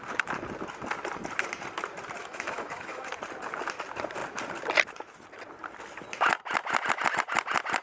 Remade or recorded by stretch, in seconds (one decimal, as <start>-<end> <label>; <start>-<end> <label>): 0.0-2.2 recorded; 2.2-3.1 remade; 3.1-7.8 recorded